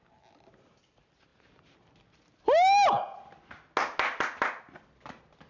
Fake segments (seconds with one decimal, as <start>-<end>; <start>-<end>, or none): none